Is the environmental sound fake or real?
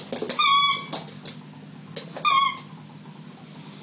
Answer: real